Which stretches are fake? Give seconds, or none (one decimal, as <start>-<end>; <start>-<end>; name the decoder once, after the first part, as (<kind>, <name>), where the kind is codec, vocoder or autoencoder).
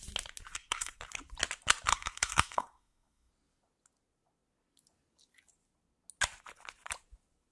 0.5-1.0 (codec, SNAC); 1.9-3.3